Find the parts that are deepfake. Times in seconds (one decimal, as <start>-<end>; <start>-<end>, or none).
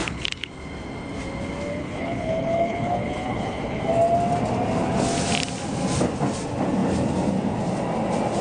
0.0-0.5; 1.7-3.8